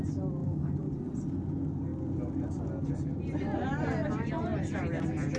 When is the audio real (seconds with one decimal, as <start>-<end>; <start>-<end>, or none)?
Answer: 0.0-0.4; 0.9-5.4